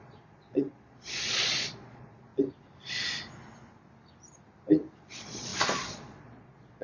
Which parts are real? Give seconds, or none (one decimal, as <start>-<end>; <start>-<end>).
2.3-5.0